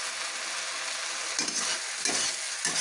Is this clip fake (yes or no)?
no